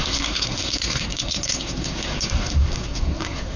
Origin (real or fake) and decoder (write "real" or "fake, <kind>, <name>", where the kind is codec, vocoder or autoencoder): fake, codec, SNAC